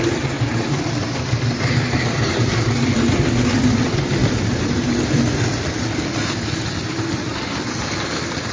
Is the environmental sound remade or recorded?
remade